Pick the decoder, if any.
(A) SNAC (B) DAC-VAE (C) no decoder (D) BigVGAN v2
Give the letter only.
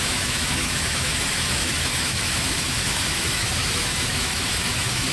B